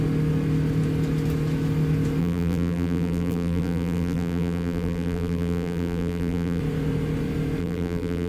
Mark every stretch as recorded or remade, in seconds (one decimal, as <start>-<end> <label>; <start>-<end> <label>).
0.0-2.2 recorded; 2.2-6.6 remade; 6.6-7.6 recorded; 7.6-8.3 remade

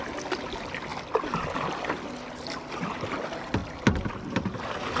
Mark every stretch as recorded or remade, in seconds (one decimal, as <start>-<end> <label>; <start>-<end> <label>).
0.0-5.0 recorded

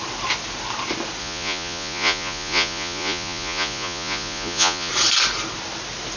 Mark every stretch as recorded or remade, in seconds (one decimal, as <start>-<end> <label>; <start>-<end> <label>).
0.0-1.2 recorded; 1.2-4.9 remade; 4.9-6.2 recorded

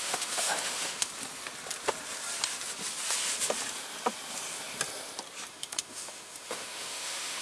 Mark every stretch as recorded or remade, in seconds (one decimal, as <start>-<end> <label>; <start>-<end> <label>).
0.0-1.1 remade; 1.1-5.5 recorded; 5.5-7.4 remade

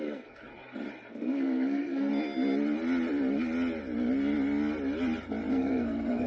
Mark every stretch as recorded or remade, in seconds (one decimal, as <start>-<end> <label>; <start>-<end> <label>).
0.0-0.4 remade; 0.4-1.1 recorded; 1.1-2.1 remade; 2.1-5.5 recorded; 5.5-6.3 remade